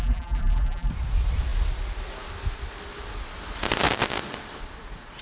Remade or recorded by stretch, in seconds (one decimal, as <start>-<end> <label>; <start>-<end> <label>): 0.0-0.9 remade; 0.9-5.2 recorded